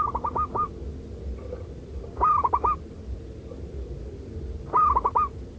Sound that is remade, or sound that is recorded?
recorded